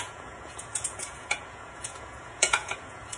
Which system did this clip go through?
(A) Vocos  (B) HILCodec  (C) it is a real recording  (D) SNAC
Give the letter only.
A